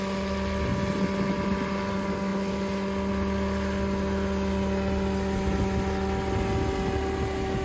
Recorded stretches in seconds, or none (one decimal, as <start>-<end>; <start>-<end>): 0.0-7.6